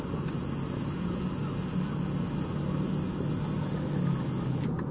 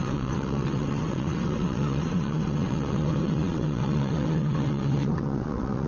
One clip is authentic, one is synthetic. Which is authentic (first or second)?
first